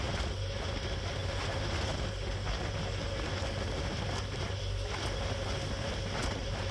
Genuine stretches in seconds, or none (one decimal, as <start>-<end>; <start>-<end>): 0.0-6.7